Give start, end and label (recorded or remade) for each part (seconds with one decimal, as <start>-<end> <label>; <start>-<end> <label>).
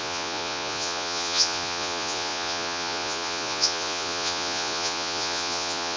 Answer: 0.0-6.0 remade